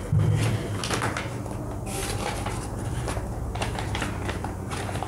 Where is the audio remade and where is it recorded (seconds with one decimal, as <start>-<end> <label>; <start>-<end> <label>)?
0.0-2.0 recorded; 2.0-5.1 remade